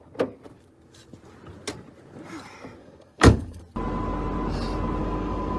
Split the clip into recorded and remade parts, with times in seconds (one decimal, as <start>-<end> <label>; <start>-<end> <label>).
0.0-2.8 recorded; 2.8-3.6 remade; 3.6-5.0 recorded; 5.0-5.6 remade